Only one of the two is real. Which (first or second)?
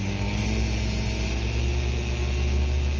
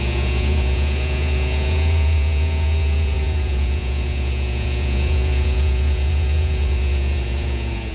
first